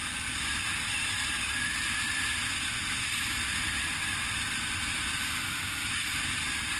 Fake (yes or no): no